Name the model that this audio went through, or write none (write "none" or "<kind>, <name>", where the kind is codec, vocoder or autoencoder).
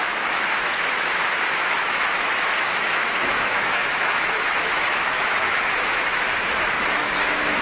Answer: autoencoder, DAC-VAE